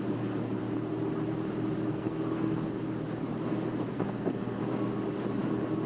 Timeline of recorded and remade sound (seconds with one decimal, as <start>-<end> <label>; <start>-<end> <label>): 0.0-1.9 recorded; 1.9-2.7 remade; 2.7-3.9 recorded; 3.9-4.6 remade; 4.6-5.9 recorded